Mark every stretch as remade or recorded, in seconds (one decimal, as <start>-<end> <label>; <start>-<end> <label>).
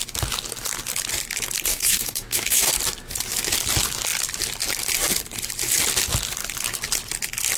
0.0-1.7 recorded; 1.7-2.7 remade; 2.7-7.6 recorded